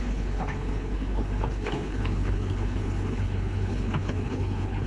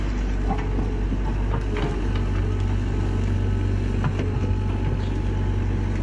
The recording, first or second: second